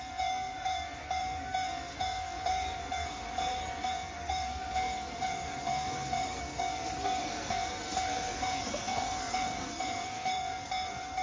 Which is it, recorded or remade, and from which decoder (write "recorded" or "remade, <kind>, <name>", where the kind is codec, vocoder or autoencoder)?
remade, codec, SNAC